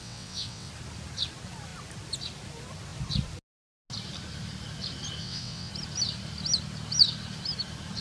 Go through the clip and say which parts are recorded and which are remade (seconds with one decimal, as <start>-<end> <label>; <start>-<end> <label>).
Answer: 0.0-0.7 remade; 0.7-5.2 recorded; 5.2-5.7 remade; 5.7-8.0 recorded